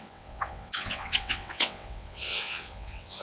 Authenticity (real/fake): fake